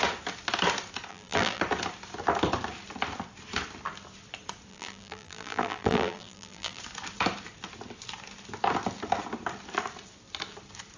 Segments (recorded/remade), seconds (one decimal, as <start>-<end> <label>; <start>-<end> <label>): 0.0-1.1 recorded; 1.1-1.6 remade; 1.6-4.7 recorded; 4.7-6.8 remade; 6.8-11.0 recorded